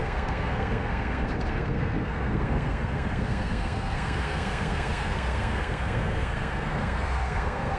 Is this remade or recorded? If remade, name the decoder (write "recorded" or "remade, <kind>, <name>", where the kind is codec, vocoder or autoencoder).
remade, codec, SNAC